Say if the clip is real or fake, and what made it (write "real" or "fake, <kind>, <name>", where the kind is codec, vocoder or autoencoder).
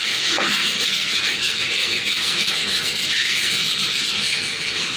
fake, codec, SNAC